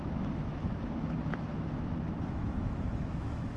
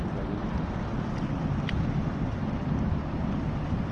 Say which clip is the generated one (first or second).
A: first